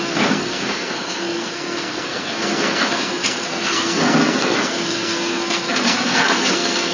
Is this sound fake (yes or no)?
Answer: yes